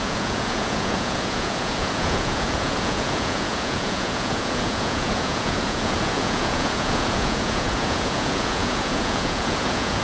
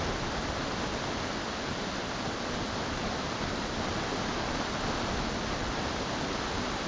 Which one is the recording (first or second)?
second